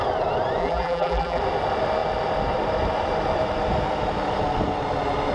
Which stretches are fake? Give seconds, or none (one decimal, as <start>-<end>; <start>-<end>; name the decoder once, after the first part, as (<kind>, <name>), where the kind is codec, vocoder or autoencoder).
0.6-1.4 (vocoder, BigVGAN v2)